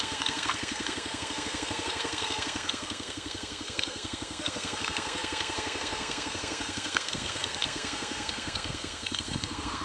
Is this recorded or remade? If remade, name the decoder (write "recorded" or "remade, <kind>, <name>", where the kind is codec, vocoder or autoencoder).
remade, codec, SNAC